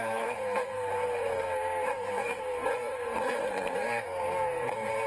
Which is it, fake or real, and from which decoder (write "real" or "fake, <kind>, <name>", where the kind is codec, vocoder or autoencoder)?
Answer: fake, codec, SNAC